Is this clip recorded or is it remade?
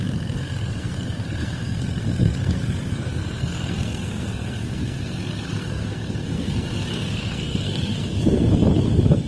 remade